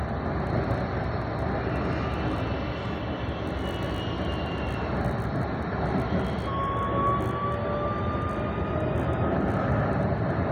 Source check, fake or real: real